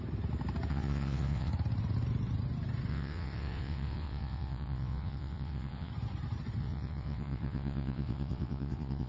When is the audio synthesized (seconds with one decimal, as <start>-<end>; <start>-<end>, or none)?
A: 0.7-1.5; 2.9-5.9; 6.6-9.1